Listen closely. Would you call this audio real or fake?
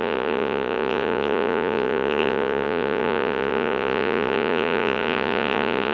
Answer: fake